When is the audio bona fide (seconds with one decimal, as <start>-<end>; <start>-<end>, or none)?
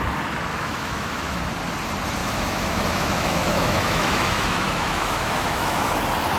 0.0-0.5; 1.4-2.2; 6.0-6.4